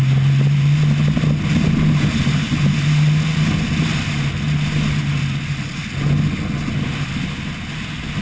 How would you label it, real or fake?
real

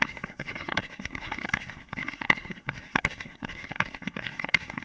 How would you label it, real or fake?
fake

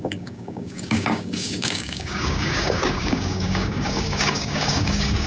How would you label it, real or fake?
fake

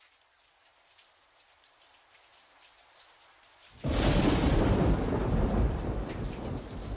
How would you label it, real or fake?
fake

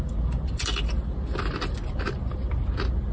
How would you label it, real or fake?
real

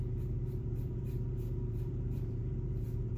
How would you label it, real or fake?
fake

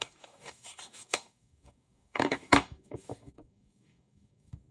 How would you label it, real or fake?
fake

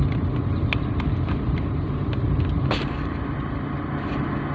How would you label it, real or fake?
real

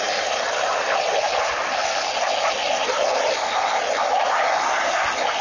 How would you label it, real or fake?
real